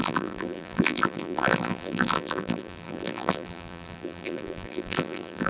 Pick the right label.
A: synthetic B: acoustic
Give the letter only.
A